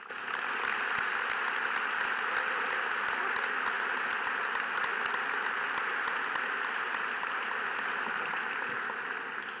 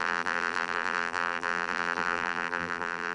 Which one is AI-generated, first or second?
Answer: second